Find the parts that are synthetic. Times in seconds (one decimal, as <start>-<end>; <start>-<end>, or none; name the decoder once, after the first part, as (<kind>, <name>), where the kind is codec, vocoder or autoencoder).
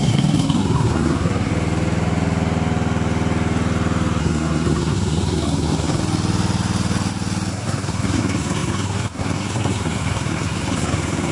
0.0-1.5 (codec, SNAC); 4.2-6.0; 7.5-11.3